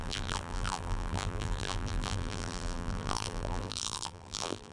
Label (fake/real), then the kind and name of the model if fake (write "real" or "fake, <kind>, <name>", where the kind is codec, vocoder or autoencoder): fake, vocoder, BigVGAN v2